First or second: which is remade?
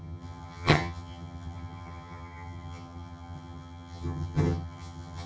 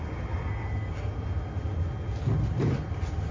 first